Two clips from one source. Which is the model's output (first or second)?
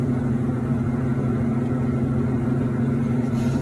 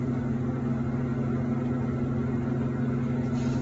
first